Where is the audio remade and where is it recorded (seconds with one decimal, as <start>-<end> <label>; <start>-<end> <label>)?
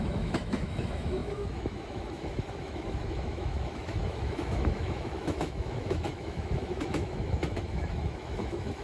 0.0-8.8 remade